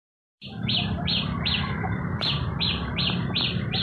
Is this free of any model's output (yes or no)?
no